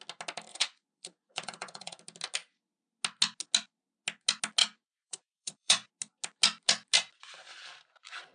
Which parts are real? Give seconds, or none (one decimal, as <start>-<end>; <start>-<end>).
0.0-0.5; 2.0-4.6; 5.9-8.3